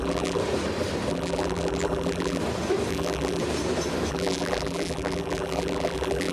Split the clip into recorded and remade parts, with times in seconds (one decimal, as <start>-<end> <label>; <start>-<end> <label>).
0.0-0.4 remade; 0.4-1.1 recorded; 1.1-2.4 remade; 2.4-2.9 recorded; 2.9-3.4 remade; 3.4-4.1 recorded; 4.1-6.3 remade